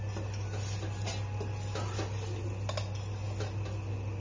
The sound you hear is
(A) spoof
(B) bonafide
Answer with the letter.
B